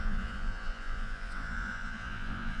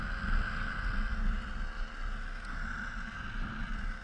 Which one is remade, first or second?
first